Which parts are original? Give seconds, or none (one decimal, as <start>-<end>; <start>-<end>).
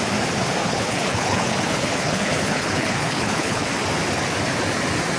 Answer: 0.0-0.6; 3.7-5.2